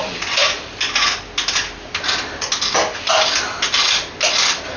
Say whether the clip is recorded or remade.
recorded